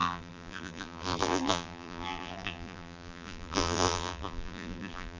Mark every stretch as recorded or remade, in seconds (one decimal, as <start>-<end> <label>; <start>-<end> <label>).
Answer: 0.0-5.2 remade

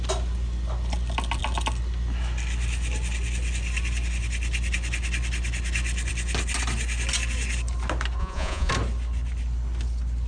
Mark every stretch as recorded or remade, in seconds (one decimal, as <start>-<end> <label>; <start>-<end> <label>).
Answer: 0.0-8.2 recorded; 8.2-8.7 remade; 8.7-10.3 recorded

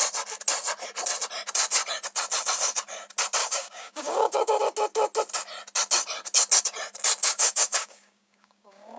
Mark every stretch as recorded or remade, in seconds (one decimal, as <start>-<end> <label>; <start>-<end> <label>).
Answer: 0.0-3.4 recorded; 3.4-4.6 remade; 4.6-7.2 recorded; 7.2-9.0 remade

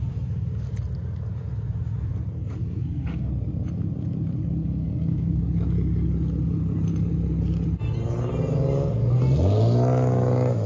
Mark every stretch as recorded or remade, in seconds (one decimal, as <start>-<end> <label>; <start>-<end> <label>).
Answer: 0.0-2.6 recorded; 2.6-3.3 remade; 3.3-4.6 recorded; 4.6-5.4 remade; 5.4-10.7 recorded